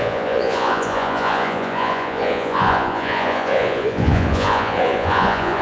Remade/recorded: remade